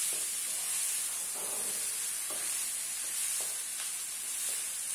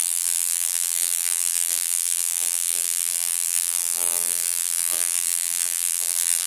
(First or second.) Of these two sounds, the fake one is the second